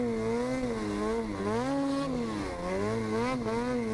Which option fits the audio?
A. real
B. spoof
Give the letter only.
A